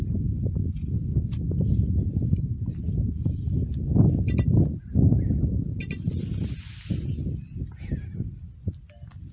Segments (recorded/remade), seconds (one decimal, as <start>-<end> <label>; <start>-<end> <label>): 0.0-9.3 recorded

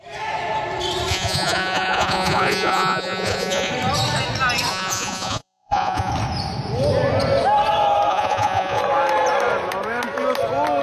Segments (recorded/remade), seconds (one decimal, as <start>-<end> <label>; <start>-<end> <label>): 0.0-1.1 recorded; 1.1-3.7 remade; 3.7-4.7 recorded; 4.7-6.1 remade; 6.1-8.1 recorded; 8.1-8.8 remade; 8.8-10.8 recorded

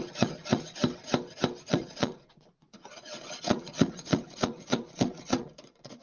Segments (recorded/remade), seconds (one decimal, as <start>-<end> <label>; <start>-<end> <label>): 0.0-0.8 remade; 0.8-1.7 recorded; 1.7-6.0 remade

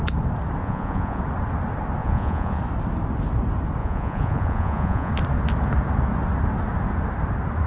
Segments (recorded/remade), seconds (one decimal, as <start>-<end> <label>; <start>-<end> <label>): 0.0-0.6 recorded; 0.6-1.2 remade; 1.2-2.0 recorded; 2.0-2.6 remade; 2.6-3.8 recorded; 3.8-5.1 remade; 5.1-7.7 recorded

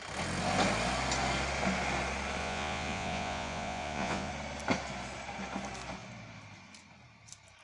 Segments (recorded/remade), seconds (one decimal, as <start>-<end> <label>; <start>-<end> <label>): 0.0-2.4 recorded; 2.4-4.3 remade; 4.3-7.6 recorded